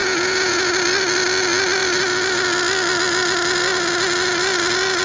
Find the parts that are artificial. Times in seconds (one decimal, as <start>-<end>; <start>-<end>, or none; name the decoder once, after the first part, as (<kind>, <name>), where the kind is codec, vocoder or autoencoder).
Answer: 0.0-0.7 (vocoder, Vocos)